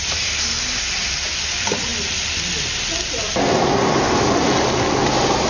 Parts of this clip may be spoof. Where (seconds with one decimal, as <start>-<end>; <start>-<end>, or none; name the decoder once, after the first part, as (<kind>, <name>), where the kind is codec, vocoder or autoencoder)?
none